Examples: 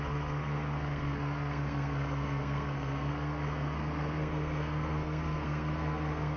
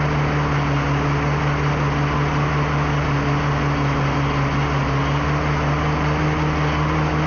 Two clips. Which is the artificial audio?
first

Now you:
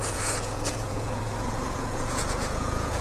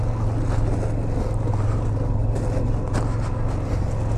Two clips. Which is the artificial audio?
first